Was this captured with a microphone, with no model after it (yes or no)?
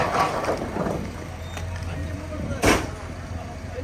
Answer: yes